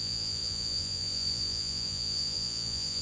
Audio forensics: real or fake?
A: fake